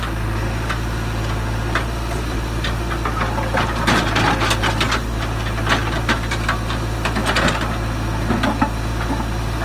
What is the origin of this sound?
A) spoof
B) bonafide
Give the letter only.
B